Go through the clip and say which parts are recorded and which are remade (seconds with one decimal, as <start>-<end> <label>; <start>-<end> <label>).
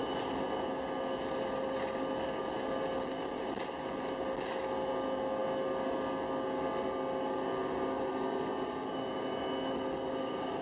0.0-10.6 recorded